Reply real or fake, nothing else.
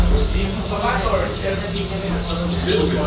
real